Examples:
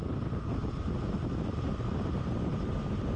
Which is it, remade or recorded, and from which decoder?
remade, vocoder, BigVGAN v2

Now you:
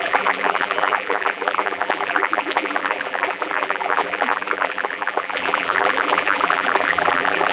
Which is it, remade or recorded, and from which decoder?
remade, vocoder, BigVGAN v2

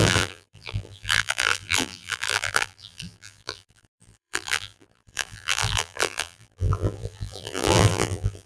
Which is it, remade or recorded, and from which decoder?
remade, vocoder, BigVGAN v2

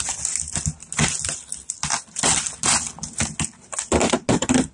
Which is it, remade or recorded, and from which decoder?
recorded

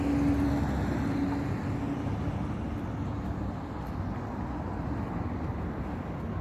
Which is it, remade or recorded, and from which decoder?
recorded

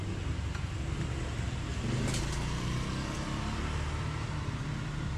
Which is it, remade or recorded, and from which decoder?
recorded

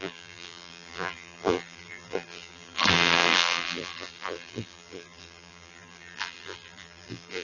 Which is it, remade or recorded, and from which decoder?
remade, vocoder, BigVGAN v2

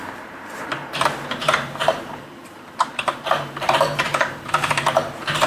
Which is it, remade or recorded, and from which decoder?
remade, vocoder, BigVGAN v2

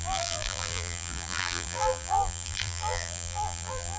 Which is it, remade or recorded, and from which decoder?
remade, vocoder, BigVGAN v2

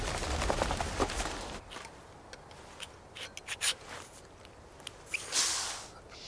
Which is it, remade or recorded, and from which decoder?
recorded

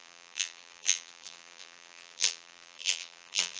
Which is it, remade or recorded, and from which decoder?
remade, vocoder, BigVGAN v2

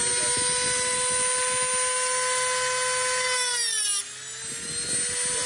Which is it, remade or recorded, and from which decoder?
recorded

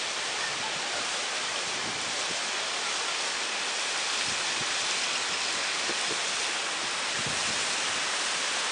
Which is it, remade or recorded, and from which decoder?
recorded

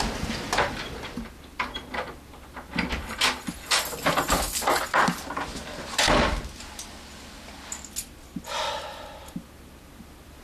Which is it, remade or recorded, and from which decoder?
recorded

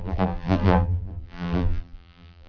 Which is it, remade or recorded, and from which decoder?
remade, vocoder, BigVGAN v2